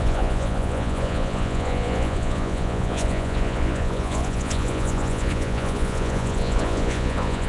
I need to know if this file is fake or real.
fake